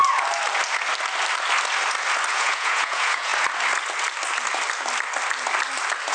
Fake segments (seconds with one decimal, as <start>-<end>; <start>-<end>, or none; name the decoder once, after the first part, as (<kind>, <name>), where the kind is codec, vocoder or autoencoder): 2.3-3.3 (vocoder, Vocos)